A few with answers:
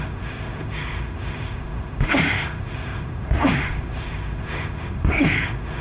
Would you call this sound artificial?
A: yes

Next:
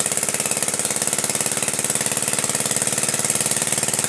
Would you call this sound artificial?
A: yes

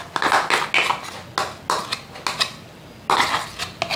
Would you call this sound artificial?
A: no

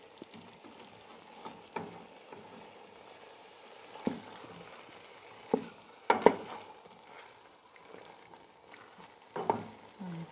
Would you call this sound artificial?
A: no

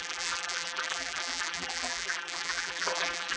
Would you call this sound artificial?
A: yes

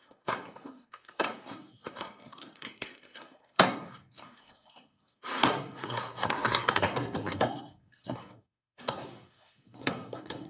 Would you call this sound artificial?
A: yes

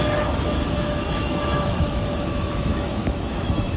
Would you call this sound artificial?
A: yes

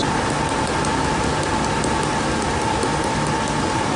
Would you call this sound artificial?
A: no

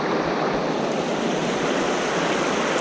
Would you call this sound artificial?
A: no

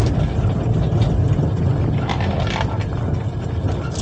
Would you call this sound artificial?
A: no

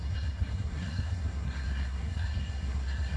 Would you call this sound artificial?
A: yes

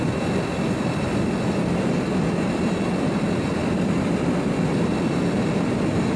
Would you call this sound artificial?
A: no